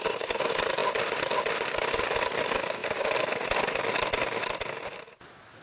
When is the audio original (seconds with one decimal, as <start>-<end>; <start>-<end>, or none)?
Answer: 0.0-5.6